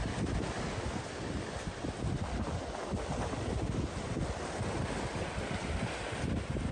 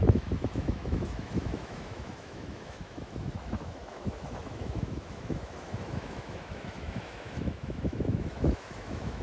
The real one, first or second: first